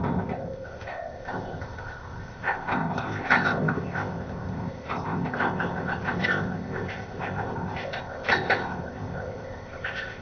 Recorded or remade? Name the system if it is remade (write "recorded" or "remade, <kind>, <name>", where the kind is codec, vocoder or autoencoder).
remade, codec, ZipCodec